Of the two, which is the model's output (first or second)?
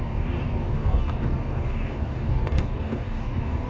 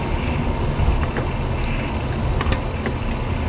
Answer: first